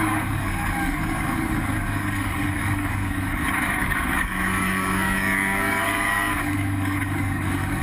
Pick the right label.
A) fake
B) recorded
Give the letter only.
A